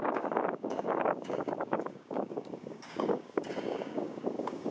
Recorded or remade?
remade